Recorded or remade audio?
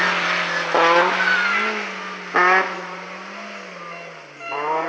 recorded